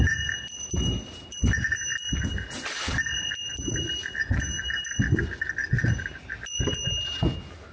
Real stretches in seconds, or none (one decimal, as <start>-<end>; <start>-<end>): 0.0-7.7